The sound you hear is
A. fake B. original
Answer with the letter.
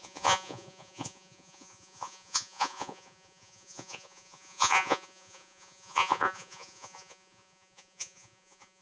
A